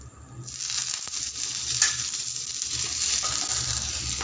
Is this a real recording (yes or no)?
yes